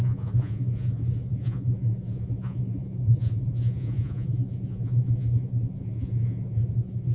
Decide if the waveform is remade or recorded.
remade